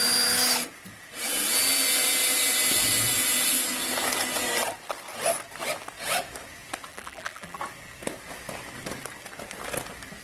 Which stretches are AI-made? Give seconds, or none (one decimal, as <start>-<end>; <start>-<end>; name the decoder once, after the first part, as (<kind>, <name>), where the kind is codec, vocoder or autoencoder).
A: 6.9-7.6 (vocoder, BigVGAN v2)